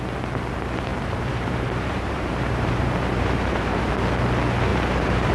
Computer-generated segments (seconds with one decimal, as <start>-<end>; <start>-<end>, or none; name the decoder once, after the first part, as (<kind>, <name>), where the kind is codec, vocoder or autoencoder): 0.9-3.9 (vocoder, BigVGAN v2); 4.7-5.3